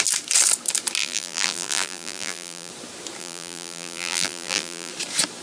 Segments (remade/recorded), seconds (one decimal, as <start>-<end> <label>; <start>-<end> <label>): 0.0-1.0 recorded; 1.0-2.7 remade; 2.7-3.2 recorded; 3.2-4.9 remade; 4.9-5.4 recorded